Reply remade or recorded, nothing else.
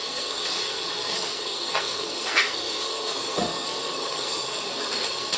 remade